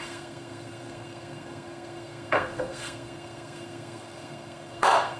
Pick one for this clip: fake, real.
fake